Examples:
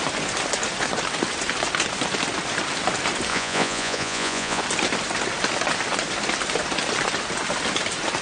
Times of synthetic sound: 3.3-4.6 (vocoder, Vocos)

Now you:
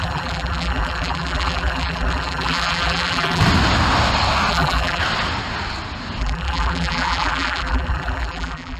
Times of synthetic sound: 0.0-3.4 (vocoder, BigVGAN v2); 4.5-5.0; 6.2-8.8

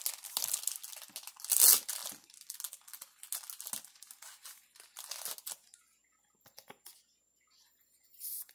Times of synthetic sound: none

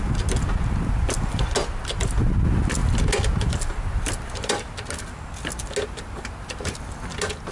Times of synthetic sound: none

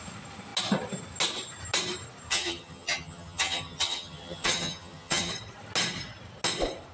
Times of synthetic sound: 2.3-5.3 (vocoder, HiFi-GAN)